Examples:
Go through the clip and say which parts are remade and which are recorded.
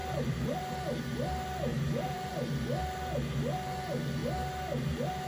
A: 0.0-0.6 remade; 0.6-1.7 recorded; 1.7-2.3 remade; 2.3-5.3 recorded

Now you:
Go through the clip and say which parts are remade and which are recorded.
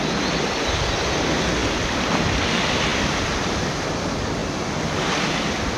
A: 0.0-1.6 recorded; 1.6-2.2 remade; 2.2-5.8 recorded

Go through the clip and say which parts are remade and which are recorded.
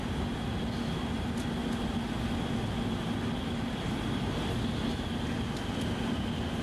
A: 0.0-6.6 recorded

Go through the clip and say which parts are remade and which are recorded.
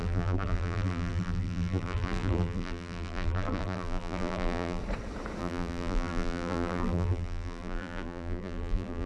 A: 0.0-4.8 remade; 4.8-5.4 recorded; 5.4-9.1 remade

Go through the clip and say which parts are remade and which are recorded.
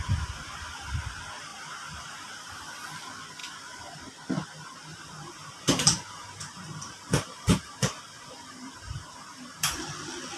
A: 0.0-1.5 recorded; 1.5-2.5 remade; 2.5-3.4 recorded; 3.4-4.0 remade; 4.0-4.9 recorded; 4.9-9.9 remade; 9.9-10.4 recorded